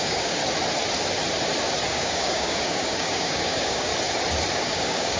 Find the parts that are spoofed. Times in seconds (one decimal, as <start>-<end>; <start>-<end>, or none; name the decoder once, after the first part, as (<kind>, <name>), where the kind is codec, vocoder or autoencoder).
0.0-0.4 (codec, DAC); 1.9-3.9; 4.5-5.2